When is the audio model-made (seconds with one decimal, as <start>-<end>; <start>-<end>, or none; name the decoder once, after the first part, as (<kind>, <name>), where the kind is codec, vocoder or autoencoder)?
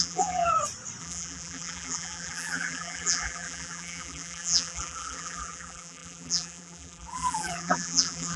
0.0-0.5 (vocoder, BigVGAN v2); 1.0-8.4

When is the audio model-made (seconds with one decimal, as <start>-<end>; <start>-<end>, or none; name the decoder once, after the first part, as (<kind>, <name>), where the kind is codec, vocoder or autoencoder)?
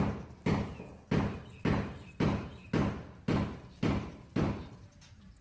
none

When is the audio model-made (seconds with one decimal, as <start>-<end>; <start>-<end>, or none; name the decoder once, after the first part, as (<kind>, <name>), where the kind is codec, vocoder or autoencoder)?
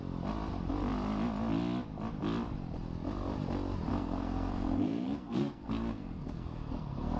3.9-7.2 (codec, SNAC)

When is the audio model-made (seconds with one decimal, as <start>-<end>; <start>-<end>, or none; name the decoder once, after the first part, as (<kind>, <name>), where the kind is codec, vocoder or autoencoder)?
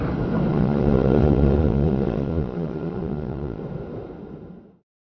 0.5-3.6 (vocoder, Vocos)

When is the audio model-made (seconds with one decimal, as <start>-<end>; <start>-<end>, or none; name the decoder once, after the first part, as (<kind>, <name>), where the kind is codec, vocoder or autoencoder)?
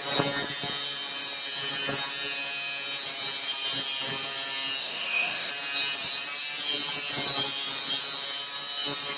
4.8-5.5 (autoencoder, DAC-VAE)